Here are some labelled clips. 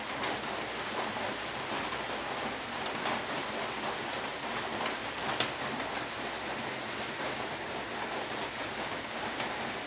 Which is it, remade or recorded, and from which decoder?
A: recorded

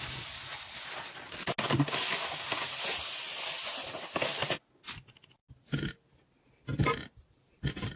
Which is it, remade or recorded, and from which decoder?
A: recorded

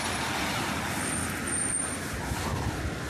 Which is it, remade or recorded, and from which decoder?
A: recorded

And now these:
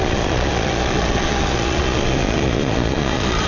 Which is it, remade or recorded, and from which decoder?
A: remade, vocoder, Vocos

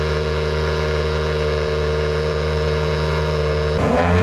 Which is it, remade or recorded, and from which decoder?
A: remade, vocoder, Vocos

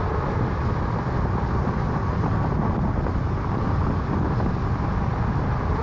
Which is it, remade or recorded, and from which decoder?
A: recorded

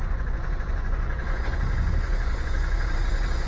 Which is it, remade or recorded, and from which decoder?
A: remade, vocoder, Vocos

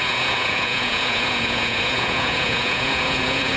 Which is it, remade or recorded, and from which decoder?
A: remade, vocoder, Vocos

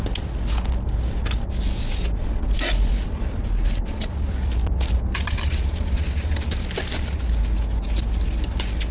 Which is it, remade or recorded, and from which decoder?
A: recorded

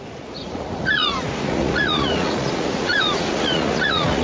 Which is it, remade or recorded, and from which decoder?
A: remade, vocoder, Vocos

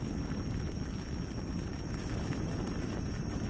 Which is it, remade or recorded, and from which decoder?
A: recorded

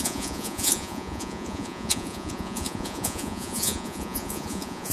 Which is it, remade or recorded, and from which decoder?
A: remade, vocoder, Vocos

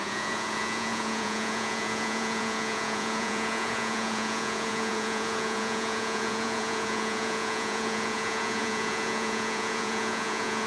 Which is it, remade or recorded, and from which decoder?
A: remade, vocoder, Vocos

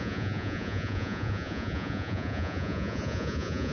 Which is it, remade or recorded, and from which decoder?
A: remade, vocoder, Vocos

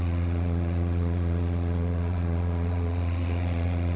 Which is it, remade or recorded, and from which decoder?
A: remade, vocoder, Vocos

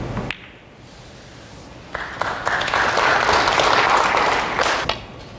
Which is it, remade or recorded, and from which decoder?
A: recorded